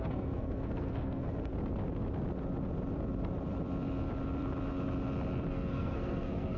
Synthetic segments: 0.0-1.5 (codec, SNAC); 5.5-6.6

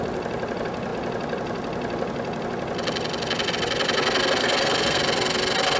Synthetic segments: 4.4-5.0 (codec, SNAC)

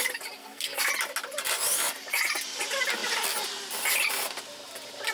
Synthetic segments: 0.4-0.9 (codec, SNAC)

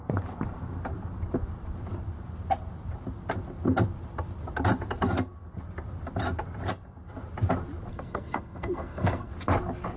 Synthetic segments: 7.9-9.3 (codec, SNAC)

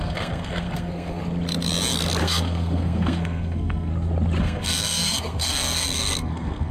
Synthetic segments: 0.0-1.2 (codec, SNAC); 2.2-3.9; 4.4-6.7

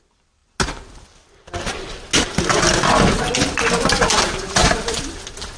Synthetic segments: none

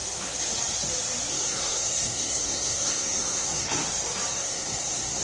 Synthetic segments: 1.3-3.7 (codec, SNAC); 4.3-5.2